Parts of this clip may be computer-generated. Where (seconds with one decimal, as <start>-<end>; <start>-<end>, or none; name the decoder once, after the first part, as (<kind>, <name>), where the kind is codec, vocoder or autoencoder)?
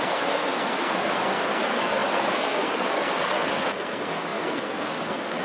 0.0-5.4 (codec, SNAC)